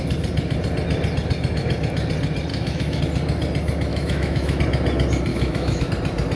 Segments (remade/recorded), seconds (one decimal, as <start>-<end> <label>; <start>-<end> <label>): 0.0-2.5 recorded; 2.5-3.0 remade; 3.0-3.9 recorded; 3.9-4.6 remade; 4.6-5.3 recorded; 5.3-5.9 remade; 5.9-6.4 recorded